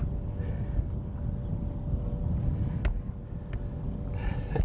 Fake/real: real